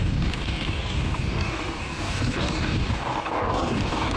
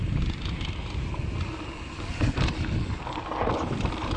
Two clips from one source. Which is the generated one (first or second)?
first